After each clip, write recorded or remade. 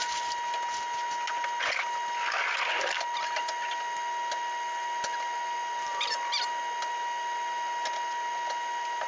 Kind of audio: recorded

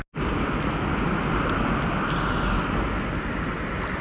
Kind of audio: recorded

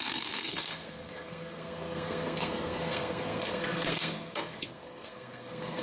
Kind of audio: remade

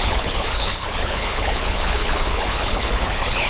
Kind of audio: remade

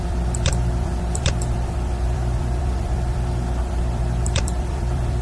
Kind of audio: remade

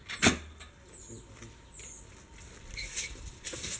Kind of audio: recorded